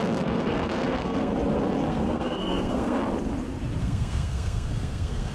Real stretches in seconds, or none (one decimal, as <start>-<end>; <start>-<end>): 1.3-1.9; 3.0-3.8